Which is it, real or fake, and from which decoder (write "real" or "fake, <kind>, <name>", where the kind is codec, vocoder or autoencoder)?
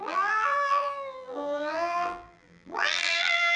fake, vocoder, BigVGAN v2